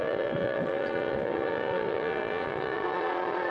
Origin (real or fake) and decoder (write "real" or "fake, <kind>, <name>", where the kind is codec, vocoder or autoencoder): fake, vocoder, Vocos